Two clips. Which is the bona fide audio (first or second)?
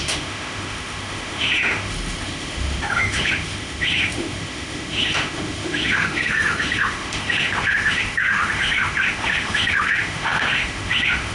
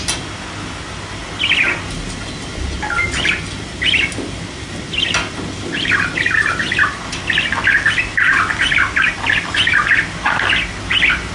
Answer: second